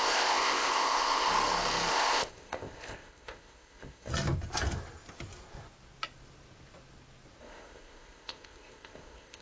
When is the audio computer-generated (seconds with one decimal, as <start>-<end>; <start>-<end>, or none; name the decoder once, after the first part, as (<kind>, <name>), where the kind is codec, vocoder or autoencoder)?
0.0-1.3 (codec, ZipCodec); 1.9-4.1; 7.4-9.4